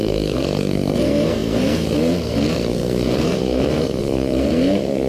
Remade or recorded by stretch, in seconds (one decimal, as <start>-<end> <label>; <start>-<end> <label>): 0.0-5.1 remade